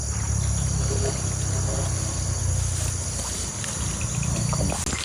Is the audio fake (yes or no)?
no